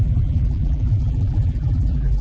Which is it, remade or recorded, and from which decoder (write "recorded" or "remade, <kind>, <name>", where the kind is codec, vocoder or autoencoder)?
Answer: remade, vocoder, BigVGAN v2